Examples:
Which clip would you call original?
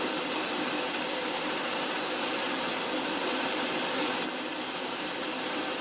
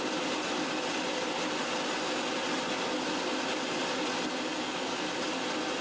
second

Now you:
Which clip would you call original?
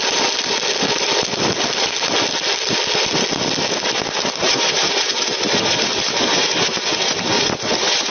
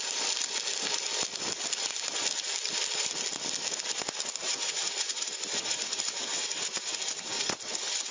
first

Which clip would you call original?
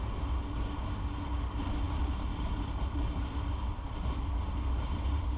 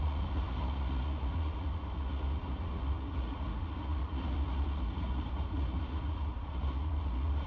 first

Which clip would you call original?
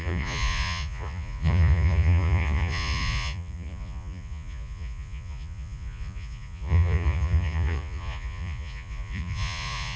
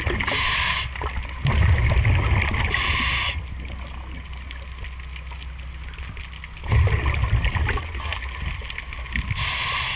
second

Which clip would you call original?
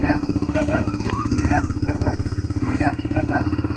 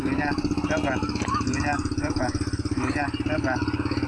second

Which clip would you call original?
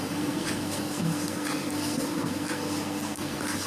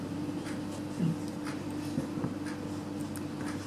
second